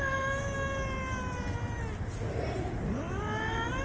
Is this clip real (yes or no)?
yes